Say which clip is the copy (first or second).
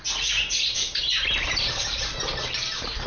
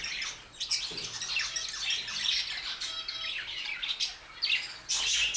first